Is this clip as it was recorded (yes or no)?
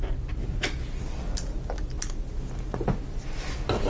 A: yes